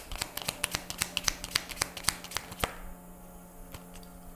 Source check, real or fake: real